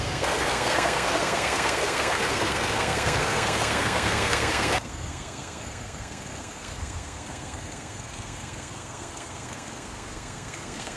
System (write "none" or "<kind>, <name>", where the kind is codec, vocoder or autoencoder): codec, SNAC